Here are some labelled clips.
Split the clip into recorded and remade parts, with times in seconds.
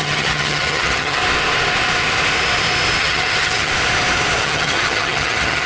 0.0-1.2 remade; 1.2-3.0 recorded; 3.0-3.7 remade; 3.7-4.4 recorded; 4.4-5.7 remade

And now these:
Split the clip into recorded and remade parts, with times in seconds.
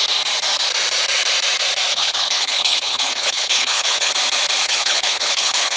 0.0-1.9 recorded; 1.9-4.1 remade; 4.1-4.6 recorded; 4.6-5.8 remade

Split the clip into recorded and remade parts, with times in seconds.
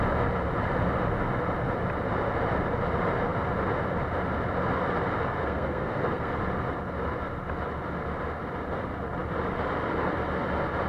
0.0-5.4 recorded; 5.4-6.3 remade; 6.3-10.9 recorded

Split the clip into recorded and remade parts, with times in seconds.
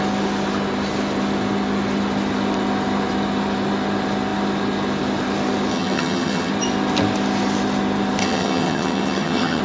0.0-5.7 recorded; 5.7-6.5 remade; 6.5-8.2 recorded; 8.2-9.6 remade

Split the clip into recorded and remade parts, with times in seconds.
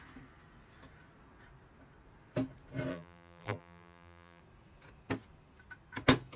0.0-2.9 recorded; 2.9-4.4 remade; 4.4-6.4 recorded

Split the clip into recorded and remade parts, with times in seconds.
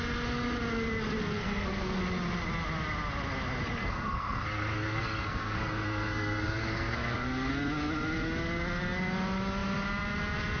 0.0-1.2 recorded; 1.2-2.0 remade; 2.0-3.8 recorded; 3.8-7.5 remade; 7.5-10.6 recorded